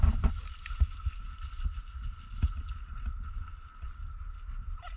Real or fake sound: real